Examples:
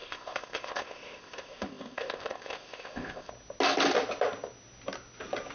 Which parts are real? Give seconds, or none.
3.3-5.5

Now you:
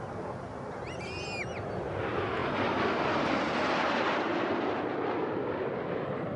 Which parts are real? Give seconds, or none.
0.0-6.4

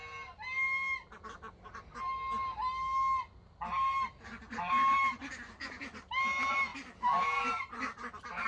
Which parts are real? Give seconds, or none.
0.0-8.5

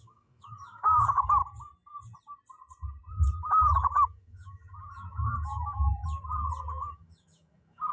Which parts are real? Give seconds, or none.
1.4-3.1; 6.0-6.6

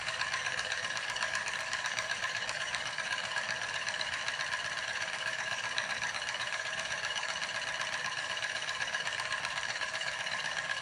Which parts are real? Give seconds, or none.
4.2-4.8; 7.4-8.0

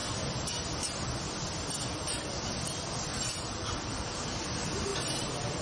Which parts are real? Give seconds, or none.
0.0-3.4